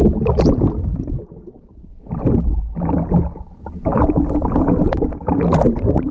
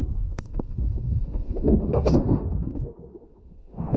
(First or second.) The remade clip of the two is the second